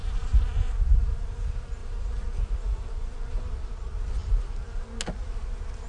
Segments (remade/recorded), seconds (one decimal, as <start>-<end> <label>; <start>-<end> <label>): 0.0-1.3 remade; 1.3-1.8 recorded; 1.8-3.7 remade; 3.7-5.9 recorded